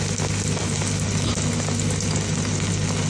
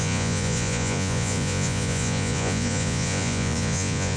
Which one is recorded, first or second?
first